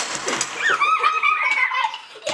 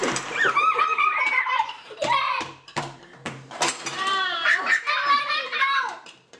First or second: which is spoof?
second